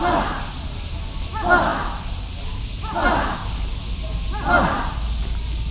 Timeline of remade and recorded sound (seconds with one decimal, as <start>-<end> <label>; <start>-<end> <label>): 0.0-5.7 recorded